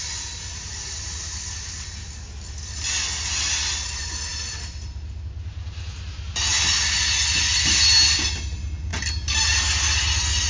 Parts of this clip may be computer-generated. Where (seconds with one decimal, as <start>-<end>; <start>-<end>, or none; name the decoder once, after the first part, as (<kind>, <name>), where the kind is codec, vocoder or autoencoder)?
none